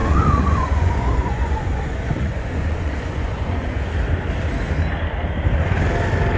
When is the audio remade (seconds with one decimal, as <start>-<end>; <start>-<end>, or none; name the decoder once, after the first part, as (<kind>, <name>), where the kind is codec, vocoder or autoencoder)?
0.0-3.8 (vocoder, Vocos)